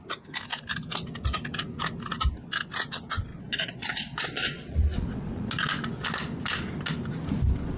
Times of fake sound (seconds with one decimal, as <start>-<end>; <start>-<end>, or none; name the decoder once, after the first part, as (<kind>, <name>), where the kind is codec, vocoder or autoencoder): 3.3-5.5 (vocoder, Vocos)